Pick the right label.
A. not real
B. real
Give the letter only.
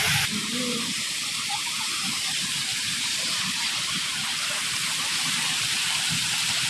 A